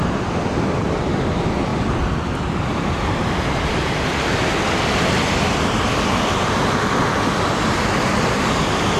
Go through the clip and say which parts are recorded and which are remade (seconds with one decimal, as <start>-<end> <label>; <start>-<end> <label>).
0.0-9.0 recorded